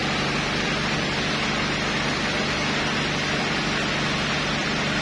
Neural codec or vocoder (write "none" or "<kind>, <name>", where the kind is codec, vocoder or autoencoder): none